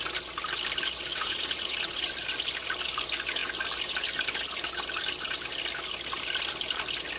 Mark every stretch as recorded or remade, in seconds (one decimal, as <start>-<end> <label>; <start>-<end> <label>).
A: 0.0-1.1 recorded; 1.1-2.0 remade; 2.0-7.2 recorded